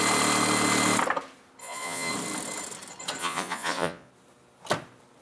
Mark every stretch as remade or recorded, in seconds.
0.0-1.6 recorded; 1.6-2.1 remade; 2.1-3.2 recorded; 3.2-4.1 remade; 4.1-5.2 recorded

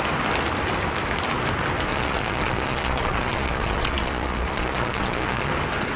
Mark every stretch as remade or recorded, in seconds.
0.0-1.9 recorded; 1.9-5.5 remade; 5.5-6.0 recorded

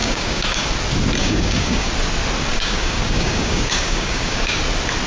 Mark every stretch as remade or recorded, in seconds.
0.0-0.7 remade; 0.7-1.2 recorded; 1.2-1.9 remade; 1.9-2.5 recorded; 2.5-4.6 remade; 4.6-5.1 recorded

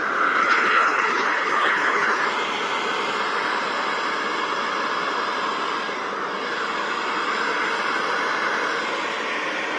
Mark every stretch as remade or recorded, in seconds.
0.0-0.4 recorded; 0.4-2.2 remade; 2.2-9.8 recorded